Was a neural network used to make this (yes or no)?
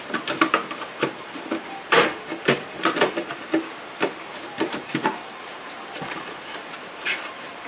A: yes